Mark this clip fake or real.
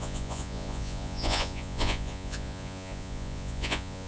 fake